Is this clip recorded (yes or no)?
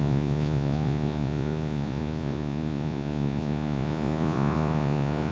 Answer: no